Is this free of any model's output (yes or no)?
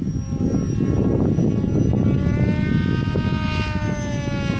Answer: yes